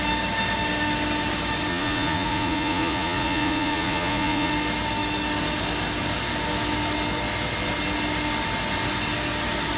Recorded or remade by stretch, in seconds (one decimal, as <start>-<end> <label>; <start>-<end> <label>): 0.0-1.7 recorded; 1.7-4.5 remade; 4.5-9.8 recorded